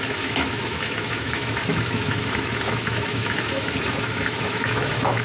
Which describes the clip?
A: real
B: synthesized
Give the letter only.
B